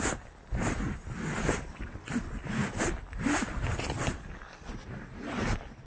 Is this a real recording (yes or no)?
yes